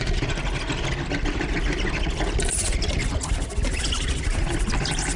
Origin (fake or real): real